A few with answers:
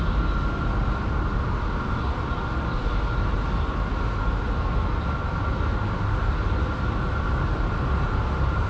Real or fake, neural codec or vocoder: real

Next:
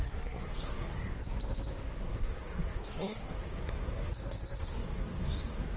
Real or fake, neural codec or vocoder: fake, codec, SNAC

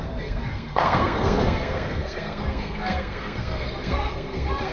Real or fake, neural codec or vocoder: fake, codec, SNAC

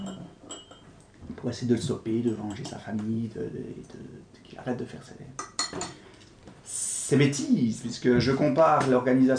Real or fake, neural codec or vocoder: real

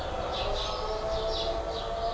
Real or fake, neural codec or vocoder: real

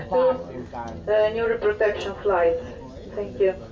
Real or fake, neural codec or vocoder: real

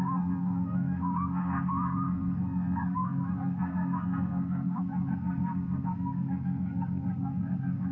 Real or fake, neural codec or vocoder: fake, codec, SNAC